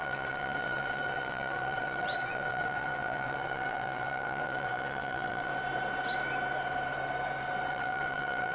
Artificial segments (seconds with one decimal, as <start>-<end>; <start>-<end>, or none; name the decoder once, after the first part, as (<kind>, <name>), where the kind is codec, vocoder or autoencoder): 0.0-5.5 (vocoder, WaveNeXt); 7.7-8.5